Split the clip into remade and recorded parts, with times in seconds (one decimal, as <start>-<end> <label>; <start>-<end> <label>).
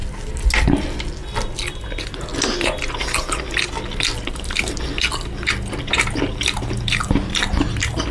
0.0-1.7 recorded; 1.7-2.3 remade; 2.3-4.3 recorded; 4.3-4.9 remade; 4.9-5.9 recorded; 5.9-8.1 remade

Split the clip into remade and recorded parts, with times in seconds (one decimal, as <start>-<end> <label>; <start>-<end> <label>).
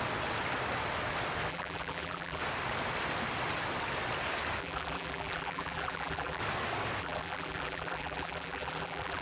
0.0-1.5 recorded; 1.5-2.4 remade; 2.4-4.6 recorded; 4.6-6.4 remade; 6.4-7.0 recorded; 7.0-9.2 remade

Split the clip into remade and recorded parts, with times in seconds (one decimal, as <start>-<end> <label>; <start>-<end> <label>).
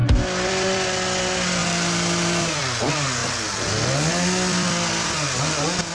0.0-1.6 recorded; 1.6-2.6 remade; 2.6-5.9 recorded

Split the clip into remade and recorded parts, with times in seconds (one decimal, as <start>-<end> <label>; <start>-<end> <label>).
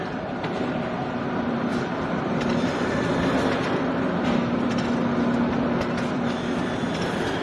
0.0-1.7 remade; 1.7-6.1 recorded; 6.1-7.4 remade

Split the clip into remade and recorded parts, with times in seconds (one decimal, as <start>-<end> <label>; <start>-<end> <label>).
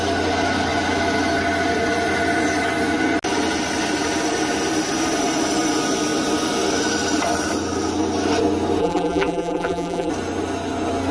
0.0-8.8 recorded; 8.8-10.1 remade; 10.1-11.1 recorded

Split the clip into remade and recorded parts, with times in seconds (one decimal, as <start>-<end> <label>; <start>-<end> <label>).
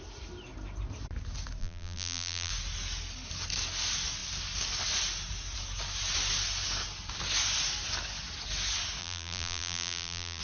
0.0-1.6 recorded; 1.6-2.5 remade; 2.5-9.0 recorded; 9.0-10.4 remade